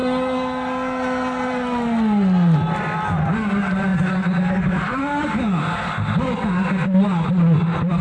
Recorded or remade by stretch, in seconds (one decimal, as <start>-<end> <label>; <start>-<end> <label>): 0.0-8.0 recorded

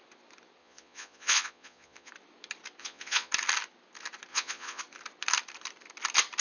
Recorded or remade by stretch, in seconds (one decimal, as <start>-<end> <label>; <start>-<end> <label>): 0.0-0.6 recorded; 0.6-2.1 remade; 2.1-2.8 recorded; 2.8-3.3 remade; 3.3-4.3 recorded; 4.3-4.8 remade; 4.8-6.4 recorded

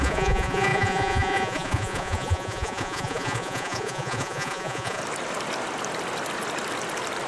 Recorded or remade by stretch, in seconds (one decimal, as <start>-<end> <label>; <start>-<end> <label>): 0.0-5.0 remade; 5.0-7.3 recorded

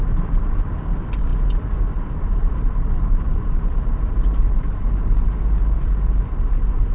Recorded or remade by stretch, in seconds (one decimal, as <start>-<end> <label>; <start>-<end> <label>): 0.0-6.9 recorded